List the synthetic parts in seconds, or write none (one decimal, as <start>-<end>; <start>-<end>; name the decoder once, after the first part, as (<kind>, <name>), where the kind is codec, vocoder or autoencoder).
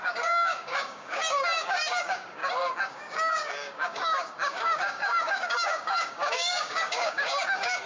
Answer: 0.0-2.4 (codec, DAC); 2.9-7.9